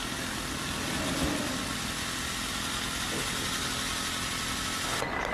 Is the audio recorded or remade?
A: recorded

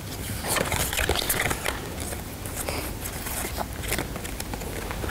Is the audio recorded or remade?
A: recorded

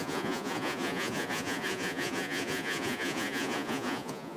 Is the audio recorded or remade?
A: remade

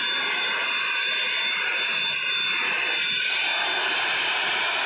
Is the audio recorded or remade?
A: recorded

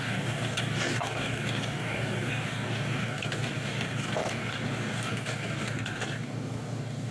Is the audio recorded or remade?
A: remade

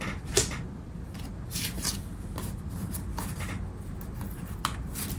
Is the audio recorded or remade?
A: recorded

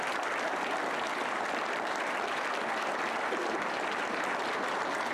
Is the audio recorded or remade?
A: recorded